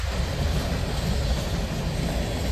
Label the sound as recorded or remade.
recorded